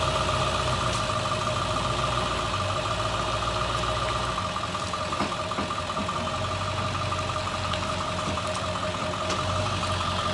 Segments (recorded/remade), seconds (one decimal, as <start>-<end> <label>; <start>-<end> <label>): 0.0-10.3 recorded